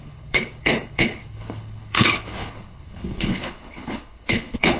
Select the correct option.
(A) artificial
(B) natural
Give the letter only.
A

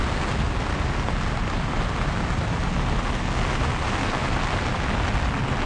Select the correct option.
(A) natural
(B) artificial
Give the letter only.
A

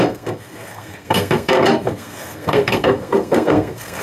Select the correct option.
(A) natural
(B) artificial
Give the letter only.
B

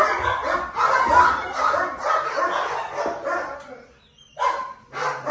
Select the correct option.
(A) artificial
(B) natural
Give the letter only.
B